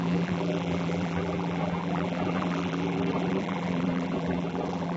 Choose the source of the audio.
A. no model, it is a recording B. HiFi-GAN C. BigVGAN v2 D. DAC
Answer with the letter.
C